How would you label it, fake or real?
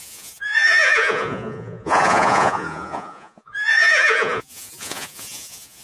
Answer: fake